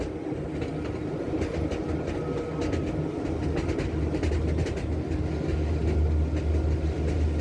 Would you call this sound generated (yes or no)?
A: no